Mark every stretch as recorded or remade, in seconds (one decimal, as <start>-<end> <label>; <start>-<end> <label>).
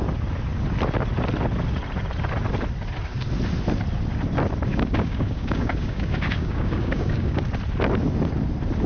0.0-4.7 recorded; 4.7-7.4 remade; 7.4-8.9 recorded